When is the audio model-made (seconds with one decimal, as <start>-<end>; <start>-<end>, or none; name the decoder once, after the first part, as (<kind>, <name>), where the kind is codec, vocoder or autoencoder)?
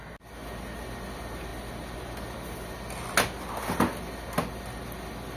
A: none